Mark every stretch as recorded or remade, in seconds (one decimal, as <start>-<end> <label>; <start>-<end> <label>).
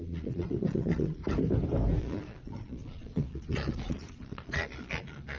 0.0-1.2 remade; 1.2-2.0 recorded; 2.0-5.4 remade